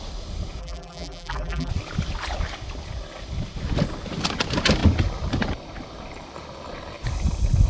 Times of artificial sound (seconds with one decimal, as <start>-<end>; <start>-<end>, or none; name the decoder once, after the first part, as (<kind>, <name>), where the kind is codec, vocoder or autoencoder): 0.6-1.7 (vocoder, BigVGAN v2)